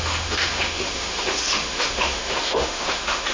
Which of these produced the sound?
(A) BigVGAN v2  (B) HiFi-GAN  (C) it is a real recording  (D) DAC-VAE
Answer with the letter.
D